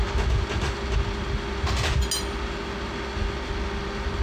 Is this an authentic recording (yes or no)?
yes